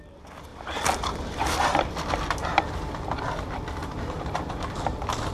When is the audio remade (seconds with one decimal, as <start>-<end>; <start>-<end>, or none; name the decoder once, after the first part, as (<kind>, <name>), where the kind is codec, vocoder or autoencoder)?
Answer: 3.8-4.4 (vocoder, BigVGAN v2)